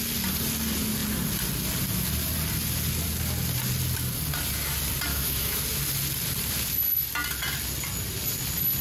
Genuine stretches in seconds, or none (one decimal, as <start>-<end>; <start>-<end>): 0.0-5.1; 5.6-8.8